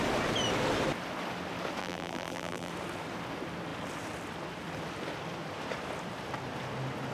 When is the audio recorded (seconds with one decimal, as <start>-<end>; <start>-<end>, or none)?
0.0-1.8; 2.7-7.1